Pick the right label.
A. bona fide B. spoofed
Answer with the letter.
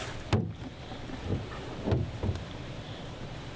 A